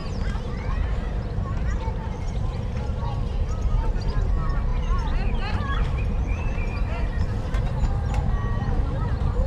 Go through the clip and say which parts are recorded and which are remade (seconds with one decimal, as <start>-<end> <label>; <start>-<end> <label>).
0.0-4.3 remade; 4.3-4.7 recorded; 4.7-7.9 remade; 7.9-9.5 recorded